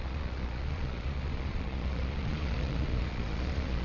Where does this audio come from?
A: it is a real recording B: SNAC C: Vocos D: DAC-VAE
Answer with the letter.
C